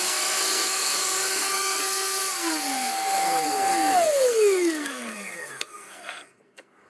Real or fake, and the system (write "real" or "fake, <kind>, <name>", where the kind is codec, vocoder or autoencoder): fake, codec, SNAC